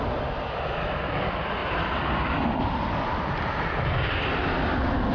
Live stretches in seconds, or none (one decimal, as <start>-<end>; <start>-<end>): 0.0-1.6